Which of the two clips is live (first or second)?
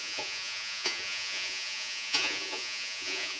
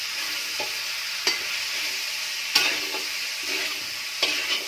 second